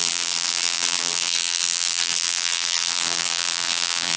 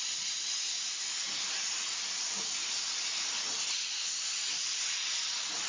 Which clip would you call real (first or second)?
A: second